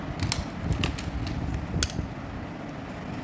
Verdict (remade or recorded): recorded